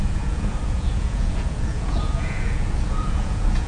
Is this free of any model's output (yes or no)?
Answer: no